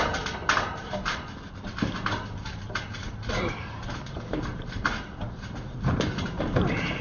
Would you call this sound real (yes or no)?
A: no